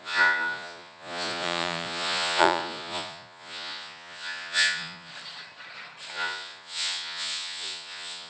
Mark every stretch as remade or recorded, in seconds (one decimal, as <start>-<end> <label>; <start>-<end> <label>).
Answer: 0.0-5.1 remade; 5.1-6.1 recorded; 6.1-8.3 remade